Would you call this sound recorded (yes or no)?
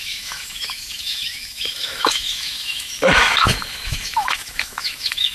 no